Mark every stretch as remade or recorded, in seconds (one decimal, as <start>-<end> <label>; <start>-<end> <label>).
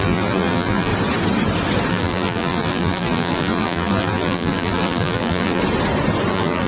0.0-0.9 remade; 0.9-1.9 recorded; 1.9-5.6 remade; 5.6-6.3 recorded; 6.3-6.7 remade